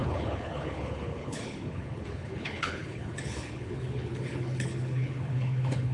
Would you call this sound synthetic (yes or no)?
yes